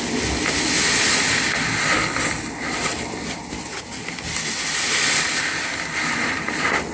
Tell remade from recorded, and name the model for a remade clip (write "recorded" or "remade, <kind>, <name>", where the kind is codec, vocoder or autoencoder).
recorded